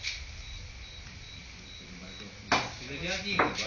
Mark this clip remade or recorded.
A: recorded